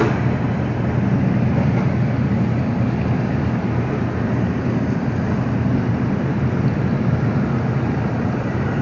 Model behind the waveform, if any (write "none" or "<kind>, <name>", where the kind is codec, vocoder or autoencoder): none